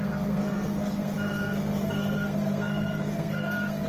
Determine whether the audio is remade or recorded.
remade